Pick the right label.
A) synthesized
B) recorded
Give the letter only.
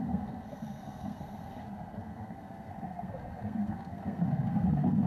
A